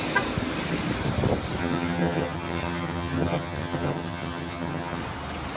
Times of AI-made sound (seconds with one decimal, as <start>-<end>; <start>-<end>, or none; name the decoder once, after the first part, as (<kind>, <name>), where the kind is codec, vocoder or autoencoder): 1.6-5.0 (vocoder, HiFi-GAN)